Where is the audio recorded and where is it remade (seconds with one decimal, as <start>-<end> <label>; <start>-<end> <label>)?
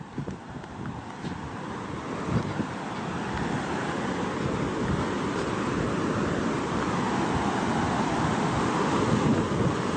0.0-8.2 recorded; 8.2-8.9 remade; 8.9-10.0 recorded